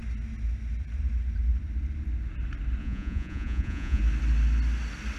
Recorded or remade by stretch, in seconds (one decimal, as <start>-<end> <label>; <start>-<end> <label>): 0.0-2.8 recorded; 2.8-4.0 remade; 4.0-5.2 recorded